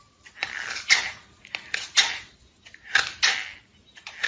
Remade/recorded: recorded